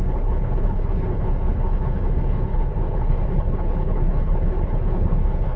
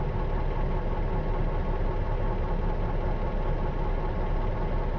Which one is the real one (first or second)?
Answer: second